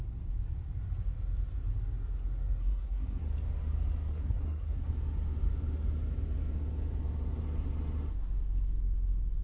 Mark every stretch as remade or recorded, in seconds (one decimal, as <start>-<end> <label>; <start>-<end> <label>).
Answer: 0.0-2.6 recorded; 2.6-3.3 remade; 3.3-4.1 recorded; 4.1-4.9 remade; 4.9-9.4 recorded

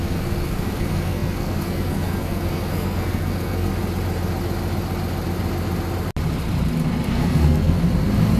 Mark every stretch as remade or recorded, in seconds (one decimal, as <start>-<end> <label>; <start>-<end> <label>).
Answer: 0.0-3.7 remade; 3.7-7.1 recorded; 7.1-7.8 remade; 7.8-8.4 recorded

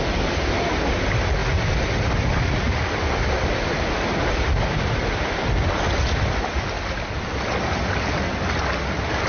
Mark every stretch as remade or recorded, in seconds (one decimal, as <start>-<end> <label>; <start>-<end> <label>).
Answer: 0.0-9.3 recorded

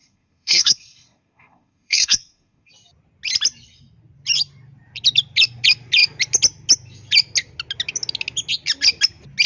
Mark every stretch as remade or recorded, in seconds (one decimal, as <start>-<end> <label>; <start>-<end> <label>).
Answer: 0.0-2.7 remade; 2.7-9.5 recorded

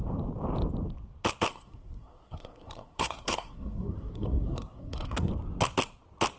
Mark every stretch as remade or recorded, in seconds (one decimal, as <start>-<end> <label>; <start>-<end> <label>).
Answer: 0.0-1.5 recorded; 1.5-5.3 remade; 5.3-6.4 recorded

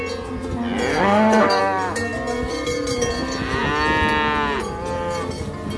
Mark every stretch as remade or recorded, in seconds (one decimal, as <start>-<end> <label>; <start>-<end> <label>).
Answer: 0.0-0.9 recorded; 0.9-1.6 remade; 1.6-5.8 recorded